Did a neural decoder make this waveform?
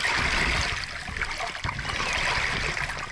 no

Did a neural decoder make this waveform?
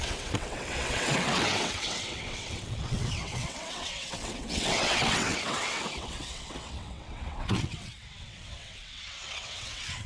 yes